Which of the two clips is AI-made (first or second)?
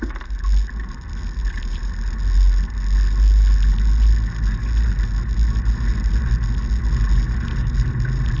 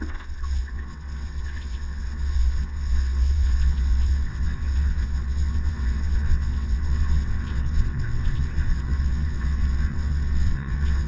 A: second